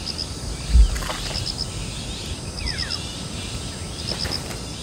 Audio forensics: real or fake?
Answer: real